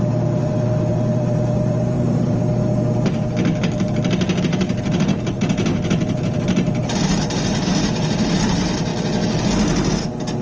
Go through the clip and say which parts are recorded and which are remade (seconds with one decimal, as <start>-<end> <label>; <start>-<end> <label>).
0.0-2.4 remade; 2.4-4.4 recorded; 4.4-8.9 remade; 8.9-9.9 recorded; 9.9-10.4 remade